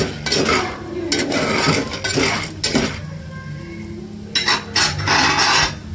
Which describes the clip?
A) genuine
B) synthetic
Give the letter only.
A